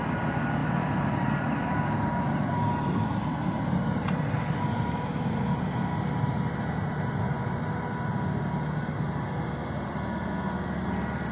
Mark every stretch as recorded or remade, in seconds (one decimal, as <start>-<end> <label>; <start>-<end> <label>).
0.0-0.6 recorded; 0.6-5.6 remade; 5.6-11.3 recorded